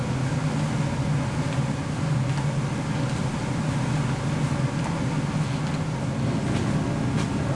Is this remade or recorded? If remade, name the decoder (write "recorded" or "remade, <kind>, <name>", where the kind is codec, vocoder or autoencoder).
recorded